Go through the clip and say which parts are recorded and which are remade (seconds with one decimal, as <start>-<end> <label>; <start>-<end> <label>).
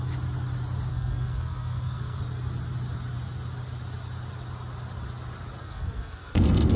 0.0-0.9 recorded; 0.9-2.2 remade; 2.2-5.6 recorded; 5.6-6.8 remade